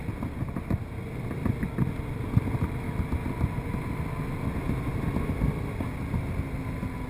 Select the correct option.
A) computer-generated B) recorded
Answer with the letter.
B